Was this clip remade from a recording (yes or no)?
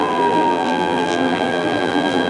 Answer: yes